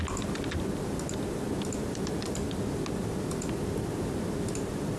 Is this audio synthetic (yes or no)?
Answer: no